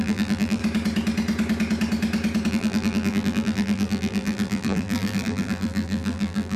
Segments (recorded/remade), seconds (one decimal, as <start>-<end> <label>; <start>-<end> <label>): 0.0-0.6 remade; 0.6-2.5 recorded; 2.5-6.6 remade